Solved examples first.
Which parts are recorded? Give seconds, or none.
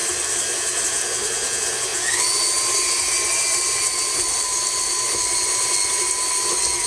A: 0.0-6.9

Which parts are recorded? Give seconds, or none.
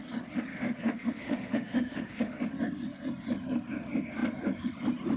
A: 0.0-0.5; 2.4-5.2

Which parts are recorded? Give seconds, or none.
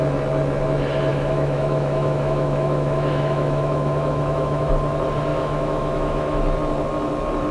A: 0.0-1.1; 4.7-5.3; 6.4-7.5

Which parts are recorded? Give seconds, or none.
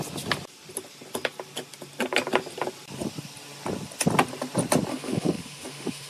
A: 0.0-4.9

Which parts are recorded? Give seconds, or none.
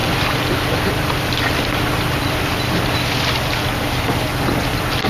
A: 0.0-5.1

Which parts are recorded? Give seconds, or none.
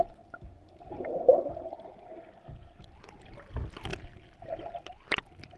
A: 0.0-5.6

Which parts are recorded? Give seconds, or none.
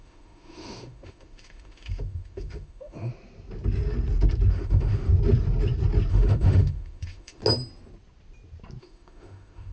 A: 3.1-4.5; 5.1-6.1; 7.4-8.8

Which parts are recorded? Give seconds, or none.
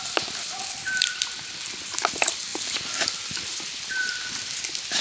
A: 0.0-5.0